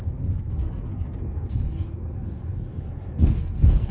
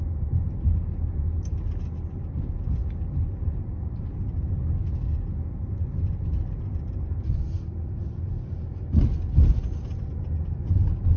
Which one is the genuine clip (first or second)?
second